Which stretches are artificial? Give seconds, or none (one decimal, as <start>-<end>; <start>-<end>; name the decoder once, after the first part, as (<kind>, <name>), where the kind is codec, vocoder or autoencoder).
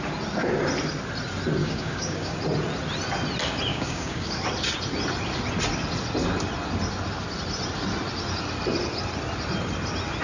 1.6-2.4 (codec, DAC); 3.7-4.3